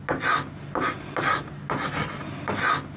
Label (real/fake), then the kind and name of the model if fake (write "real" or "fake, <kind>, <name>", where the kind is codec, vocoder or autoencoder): real